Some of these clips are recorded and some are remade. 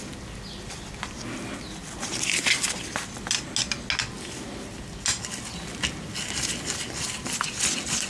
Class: recorded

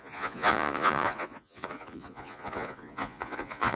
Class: remade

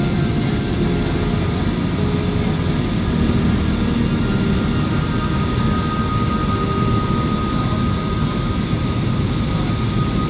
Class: recorded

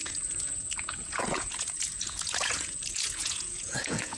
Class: remade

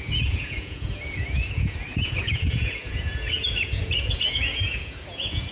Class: remade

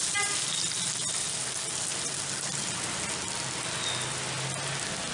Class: recorded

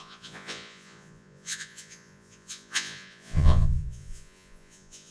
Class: remade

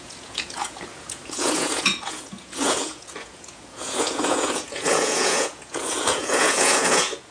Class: remade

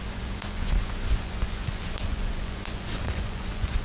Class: remade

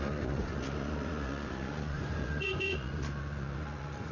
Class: remade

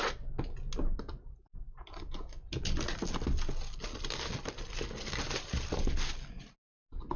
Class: recorded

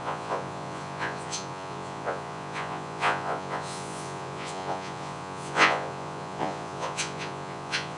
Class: remade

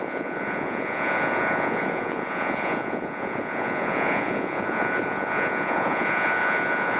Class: remade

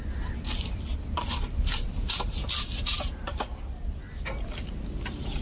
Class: recorded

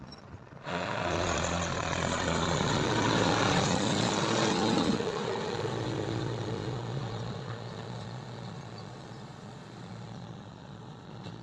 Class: remade